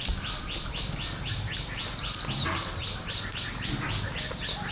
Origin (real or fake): real